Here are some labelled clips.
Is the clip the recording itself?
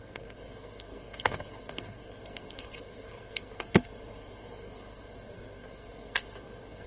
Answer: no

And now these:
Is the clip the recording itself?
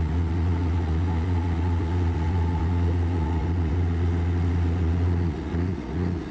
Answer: no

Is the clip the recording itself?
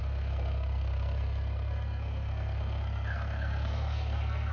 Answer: no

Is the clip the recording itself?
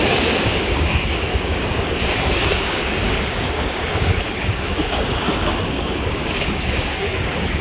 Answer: no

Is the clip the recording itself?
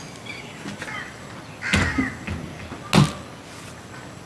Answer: yes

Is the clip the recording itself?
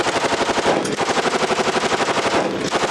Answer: yes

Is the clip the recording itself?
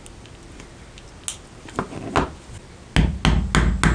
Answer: yes